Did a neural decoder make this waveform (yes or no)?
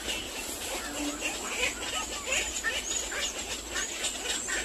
no